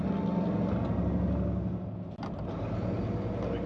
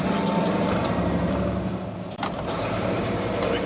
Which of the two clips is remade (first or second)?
second